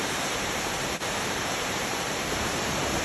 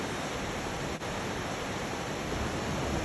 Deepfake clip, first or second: first